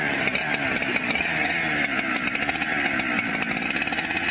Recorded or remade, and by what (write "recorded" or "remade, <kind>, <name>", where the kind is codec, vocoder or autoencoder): recorded